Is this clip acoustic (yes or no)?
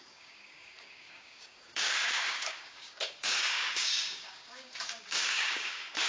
no